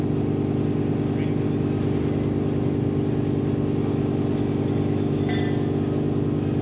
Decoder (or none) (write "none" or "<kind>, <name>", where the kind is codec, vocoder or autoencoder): none